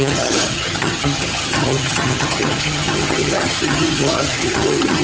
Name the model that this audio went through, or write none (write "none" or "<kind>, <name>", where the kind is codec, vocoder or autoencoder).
vocoder, HiFi-GAN